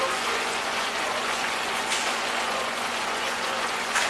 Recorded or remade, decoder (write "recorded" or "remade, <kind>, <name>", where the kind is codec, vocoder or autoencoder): remade, vocoder, Vocos